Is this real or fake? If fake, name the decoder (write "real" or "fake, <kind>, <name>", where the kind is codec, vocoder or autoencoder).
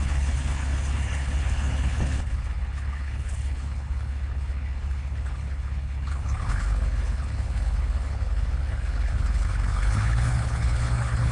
fake, codec, HILCodec